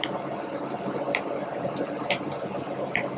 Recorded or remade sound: remade